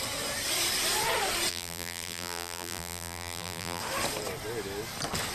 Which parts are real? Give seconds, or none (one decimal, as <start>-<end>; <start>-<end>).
0.0-1.5; 3.8-5.3

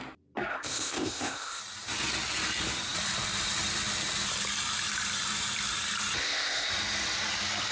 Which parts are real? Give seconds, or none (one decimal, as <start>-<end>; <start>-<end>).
0.0-0.5; 1.6-6.2; 6.7-7.7

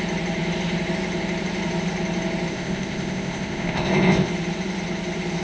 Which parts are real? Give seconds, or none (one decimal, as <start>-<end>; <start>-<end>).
0.0-2.5; 4.3-5.4

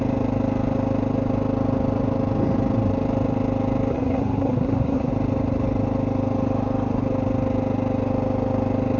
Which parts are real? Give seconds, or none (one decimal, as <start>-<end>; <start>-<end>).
0.0-3.9; 5.1-9.0

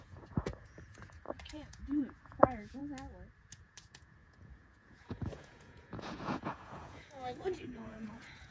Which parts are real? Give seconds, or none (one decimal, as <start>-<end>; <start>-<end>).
2.8-3.4